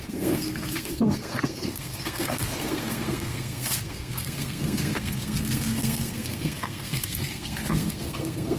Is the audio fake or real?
fake